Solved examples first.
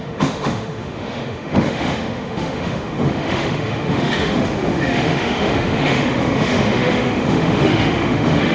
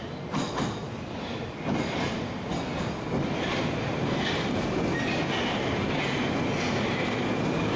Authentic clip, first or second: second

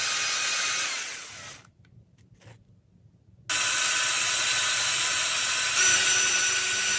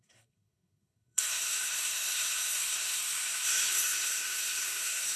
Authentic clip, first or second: first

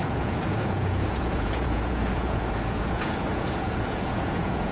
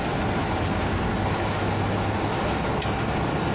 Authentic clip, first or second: second